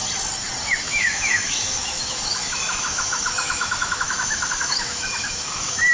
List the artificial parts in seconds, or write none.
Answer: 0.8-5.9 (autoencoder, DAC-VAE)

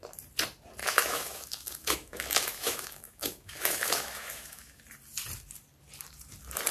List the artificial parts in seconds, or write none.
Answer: 0.8-4.8 (autoencoder, DAC-VAE)

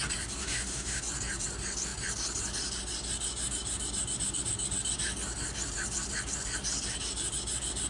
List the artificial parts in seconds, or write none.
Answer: 0.4-1.0 (autoencoder, DAC-VAE)

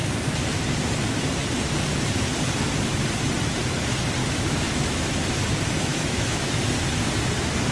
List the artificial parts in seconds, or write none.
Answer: 4.2-5.1 (autoencoder, DAC-VAE); 5.9-6.6

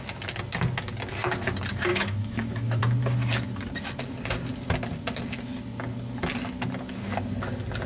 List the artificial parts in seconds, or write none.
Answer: 1.9-2.8 (autoencoder, DAC-VAE)

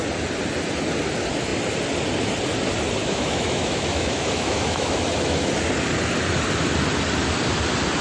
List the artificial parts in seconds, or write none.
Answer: 3.0-5.5 (autoencoder, DAC-VAE)